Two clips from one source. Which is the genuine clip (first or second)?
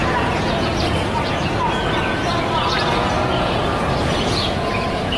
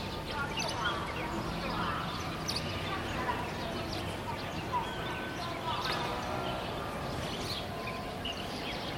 second